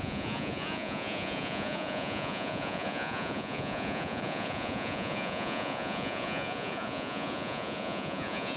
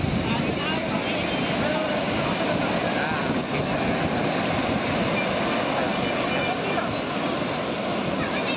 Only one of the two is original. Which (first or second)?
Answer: second